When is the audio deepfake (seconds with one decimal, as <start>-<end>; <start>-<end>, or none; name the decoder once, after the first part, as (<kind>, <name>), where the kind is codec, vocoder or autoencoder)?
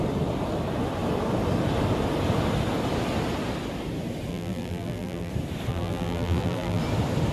4.3-5.3 (vocoder, BigVGAN v2); 5.7-6.8